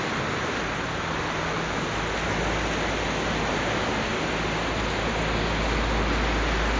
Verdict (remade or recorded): recorded